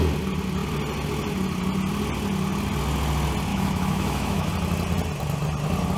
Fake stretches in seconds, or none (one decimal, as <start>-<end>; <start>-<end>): 3.5-4.5